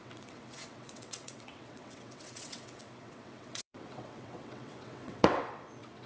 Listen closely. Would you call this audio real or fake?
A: fake